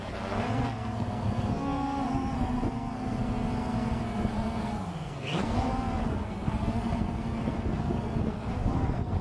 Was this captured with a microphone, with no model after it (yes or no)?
no